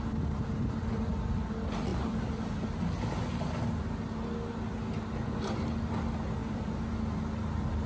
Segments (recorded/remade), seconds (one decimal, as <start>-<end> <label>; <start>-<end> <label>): 0.0-1.9 recorded; 1.9-2.8 remade; 2.8-6.4 recorded; 6.4-6.9 remade; 6.9-7.9 recorded

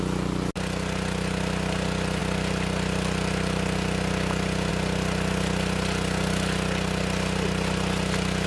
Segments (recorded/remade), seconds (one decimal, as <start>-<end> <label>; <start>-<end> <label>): 0.0-8.5 recorded

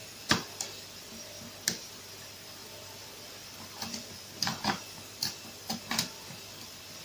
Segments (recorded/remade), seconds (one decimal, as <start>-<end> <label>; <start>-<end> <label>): 0.0-7.0 recorded

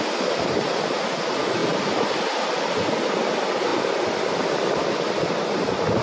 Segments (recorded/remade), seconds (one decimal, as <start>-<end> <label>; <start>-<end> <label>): 0.0-3.7 recorded; 3.7-5.1 remade; 5.1-6.0 recorded

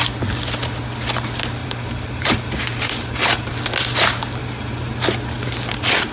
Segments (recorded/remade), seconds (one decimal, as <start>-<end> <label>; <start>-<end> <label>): 0.0-1.6 recorded; 1.6-3.5 remade; 3.5-4.4 recorded; 4.4-4.9 remade; 4.9-6.1 recorded

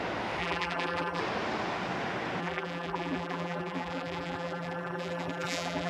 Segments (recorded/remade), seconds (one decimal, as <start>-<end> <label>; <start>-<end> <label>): 0.0-0.4 recorded; 0.4-1.2 remade; 1.2-2.4 recorded; 2.4-5.9 remade

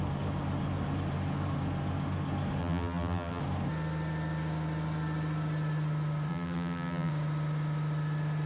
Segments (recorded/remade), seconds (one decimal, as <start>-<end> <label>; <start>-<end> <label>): 0.0-2.6 recorded; 2.6-3.4 remade; 3.4-6.3 recorded; 6.3-7.1 remade; 7.1-8.5 recorded

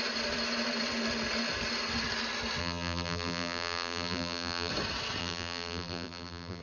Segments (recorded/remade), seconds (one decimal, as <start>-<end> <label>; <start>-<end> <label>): 0.0-2.6 recorded; 2.6-4.7 remade; 4.7-5.2 recorded; 5.2-6.6 remade